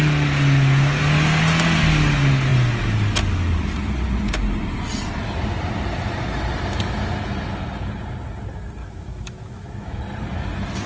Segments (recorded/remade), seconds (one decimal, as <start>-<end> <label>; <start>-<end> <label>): 0.0-8.8 recorded; 8.8-10.0 remade; 10.0-10.9 recorded